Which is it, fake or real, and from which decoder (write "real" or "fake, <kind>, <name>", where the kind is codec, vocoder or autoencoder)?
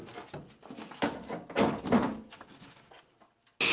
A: real